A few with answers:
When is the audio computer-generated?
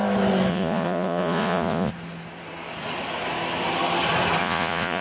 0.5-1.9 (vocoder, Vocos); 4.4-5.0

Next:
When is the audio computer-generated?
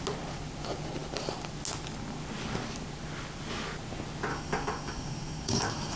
4.3-6.0 (codec, DAC)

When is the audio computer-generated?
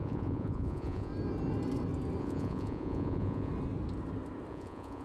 0.0-1.1 (vocoder, Vocos); 2.2-3.5; 4.5-5.0